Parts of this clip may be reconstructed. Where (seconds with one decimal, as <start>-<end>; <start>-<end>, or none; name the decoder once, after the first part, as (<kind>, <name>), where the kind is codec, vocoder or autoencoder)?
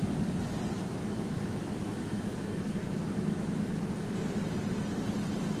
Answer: 0.9-3.8 (autoencoder, DAC-VAE)